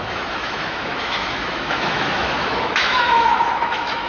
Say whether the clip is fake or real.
fake